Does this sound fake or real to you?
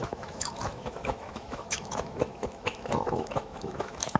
fake